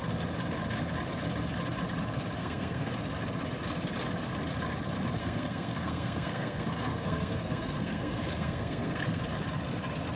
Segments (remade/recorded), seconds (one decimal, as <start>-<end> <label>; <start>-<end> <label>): 0.0-2.4 recorded; 2.4-2.9 remade; 2.9-5.2 recorded; 5.2-9.2 remade; 9.2-10.2 recorded